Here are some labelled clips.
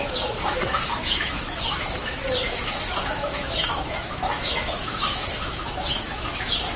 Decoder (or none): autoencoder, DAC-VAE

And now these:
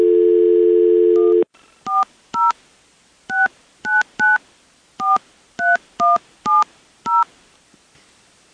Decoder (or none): none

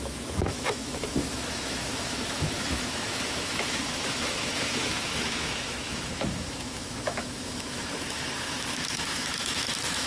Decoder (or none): autoencoder, DAC-VAE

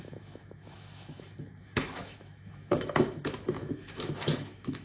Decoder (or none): autoencoder, DAC-VAE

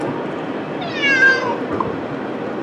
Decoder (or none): none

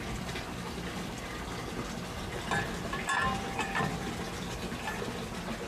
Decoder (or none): none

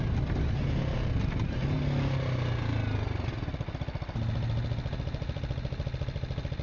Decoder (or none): none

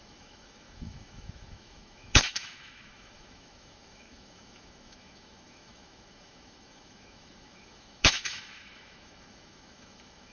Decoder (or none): autoencoder, DAC-VAE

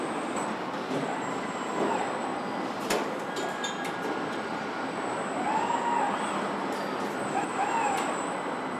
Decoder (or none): none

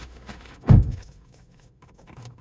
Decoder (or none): autoencoder, DAC-VAE